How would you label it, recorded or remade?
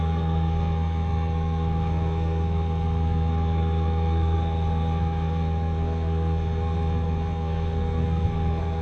remade